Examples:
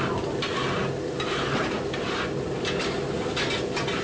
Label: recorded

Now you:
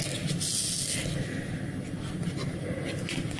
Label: recorded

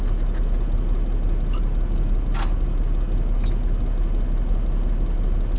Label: recorded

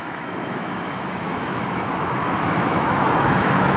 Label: remade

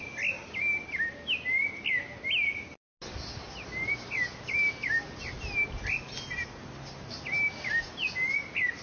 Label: recorded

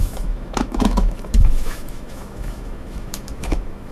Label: remade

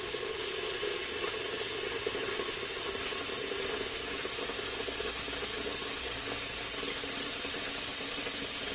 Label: recorded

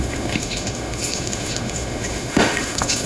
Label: remade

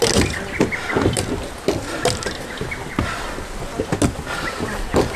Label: recorded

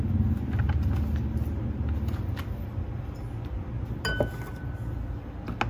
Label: recorded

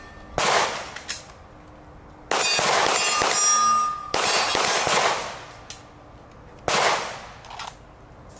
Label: recorded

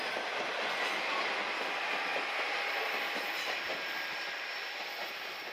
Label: recorded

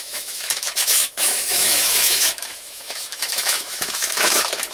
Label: remade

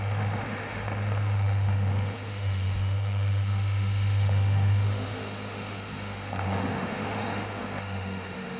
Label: remade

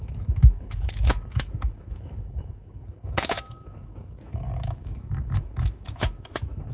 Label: remade